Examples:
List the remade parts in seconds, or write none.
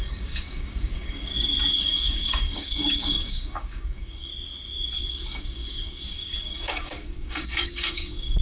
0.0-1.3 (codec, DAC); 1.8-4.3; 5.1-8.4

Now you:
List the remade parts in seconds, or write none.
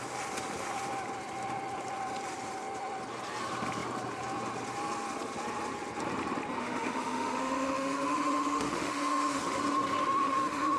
6.6-9.4 (autoencoder, DAC-VAE); 10.0-10.8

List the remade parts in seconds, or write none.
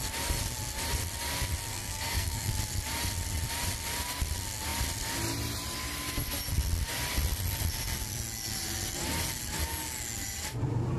1.7-2.5 (codec, SNAC)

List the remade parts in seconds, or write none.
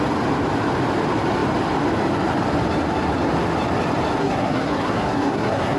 4.2-5.8 (codec, SNAC)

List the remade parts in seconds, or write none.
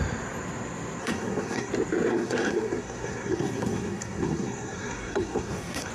1.0-1.7 (codec, SNAC); 2.1-5.9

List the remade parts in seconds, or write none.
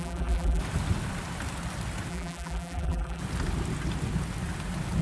0.0-0.6 (vocoder, BigVGAN v2); 2.1-3.2